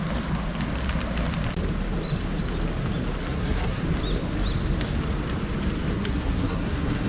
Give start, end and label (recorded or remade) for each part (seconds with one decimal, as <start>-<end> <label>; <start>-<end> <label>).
0.0-3.2 recorded; 3.2-3.8 remade; 3.8-5.9 recorded; 5.9-7.1 remade